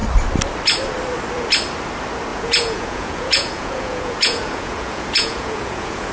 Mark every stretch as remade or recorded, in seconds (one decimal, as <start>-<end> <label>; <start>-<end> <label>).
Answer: 0.0-2.3 recorded; 2.3-6.1 remade